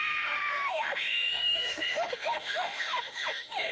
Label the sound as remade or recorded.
remade